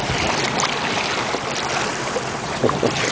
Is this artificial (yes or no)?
no